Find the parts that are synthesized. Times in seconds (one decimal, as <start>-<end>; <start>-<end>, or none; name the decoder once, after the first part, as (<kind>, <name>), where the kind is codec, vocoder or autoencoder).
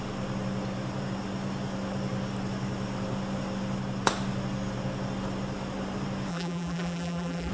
6.3-7.5 (vocoder, BigVGAN v2)